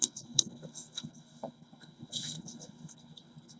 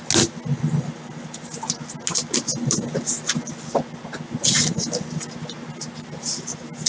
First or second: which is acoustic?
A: second